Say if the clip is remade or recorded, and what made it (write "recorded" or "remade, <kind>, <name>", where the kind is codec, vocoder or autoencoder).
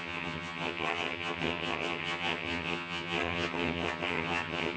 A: remade, vocoder, HiFi-GAN